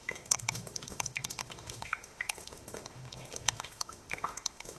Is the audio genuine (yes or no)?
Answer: no